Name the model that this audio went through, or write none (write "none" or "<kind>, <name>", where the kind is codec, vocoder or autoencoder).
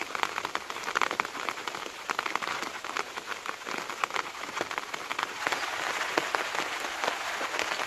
none